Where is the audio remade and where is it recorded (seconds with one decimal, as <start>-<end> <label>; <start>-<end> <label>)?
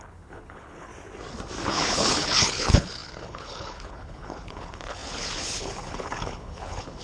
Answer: 0.0-0.9 remade; 0.9-1.6 recorded; 1.6-7.0 remade